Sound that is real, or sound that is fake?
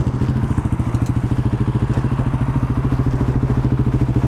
real